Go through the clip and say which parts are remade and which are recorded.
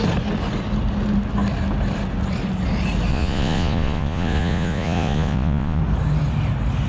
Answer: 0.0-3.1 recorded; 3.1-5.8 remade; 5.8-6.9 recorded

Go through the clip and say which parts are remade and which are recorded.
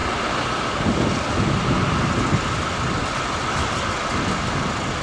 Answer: 0.0-5.0 recorded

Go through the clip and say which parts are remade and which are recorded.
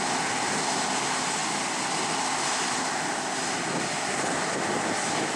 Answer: 0.0-5.4 recorded